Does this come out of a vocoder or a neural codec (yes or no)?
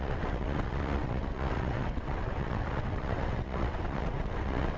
yes